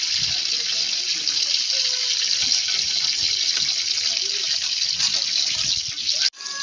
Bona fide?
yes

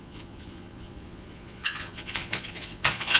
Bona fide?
no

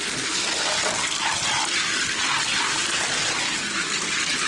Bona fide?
yes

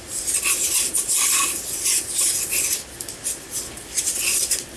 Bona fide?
yes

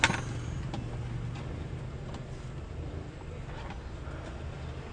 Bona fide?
yes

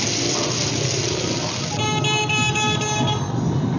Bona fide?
yes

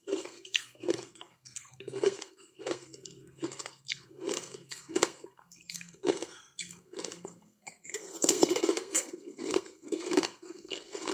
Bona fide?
no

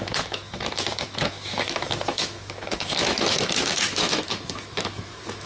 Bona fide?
no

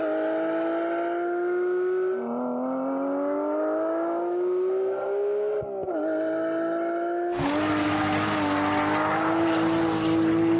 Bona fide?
yes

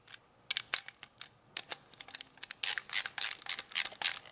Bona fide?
yes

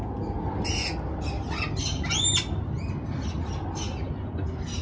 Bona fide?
yes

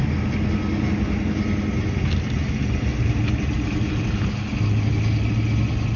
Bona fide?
yes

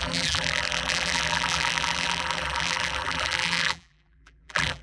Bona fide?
no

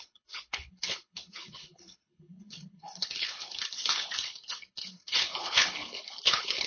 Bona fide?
no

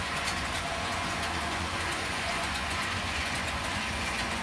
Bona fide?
no